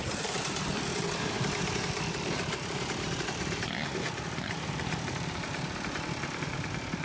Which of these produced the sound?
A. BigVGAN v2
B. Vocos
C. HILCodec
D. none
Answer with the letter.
A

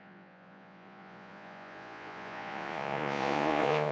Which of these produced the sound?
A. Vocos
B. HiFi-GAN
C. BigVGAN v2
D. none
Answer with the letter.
A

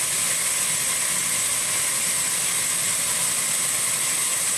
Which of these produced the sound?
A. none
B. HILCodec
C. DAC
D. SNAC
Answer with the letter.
A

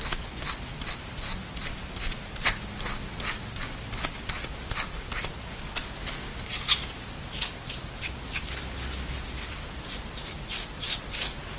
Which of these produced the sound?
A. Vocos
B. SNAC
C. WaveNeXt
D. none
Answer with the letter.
D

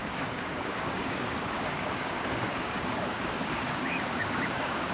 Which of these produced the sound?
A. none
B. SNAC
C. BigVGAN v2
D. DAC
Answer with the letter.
D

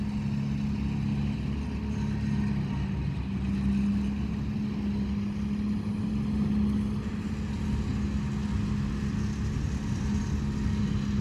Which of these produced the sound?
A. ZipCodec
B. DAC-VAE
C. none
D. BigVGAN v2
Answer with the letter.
C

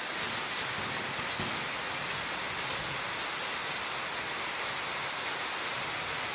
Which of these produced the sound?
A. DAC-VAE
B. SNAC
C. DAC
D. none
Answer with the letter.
D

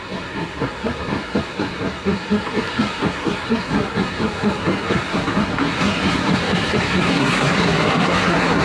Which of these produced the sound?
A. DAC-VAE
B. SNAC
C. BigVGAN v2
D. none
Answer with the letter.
B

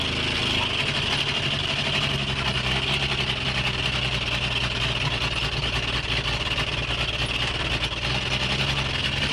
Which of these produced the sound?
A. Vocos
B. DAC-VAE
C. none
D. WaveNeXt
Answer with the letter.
C